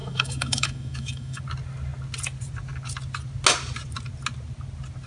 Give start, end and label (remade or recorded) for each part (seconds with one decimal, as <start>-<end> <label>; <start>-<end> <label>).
0.0-1.4 remade; 1.4-5.1 recorded